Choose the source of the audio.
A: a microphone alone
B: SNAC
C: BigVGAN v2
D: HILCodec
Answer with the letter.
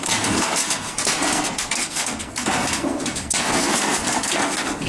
B